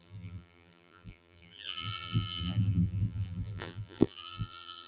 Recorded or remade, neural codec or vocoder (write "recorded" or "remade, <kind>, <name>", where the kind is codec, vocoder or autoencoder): remade, vocoder, BigVGAN v2